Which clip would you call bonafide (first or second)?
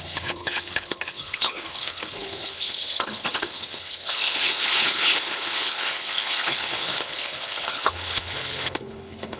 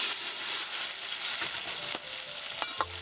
second